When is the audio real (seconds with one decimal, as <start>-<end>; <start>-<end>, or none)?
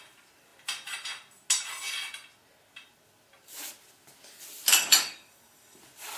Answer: 0.0-4.7; 5.8-6.2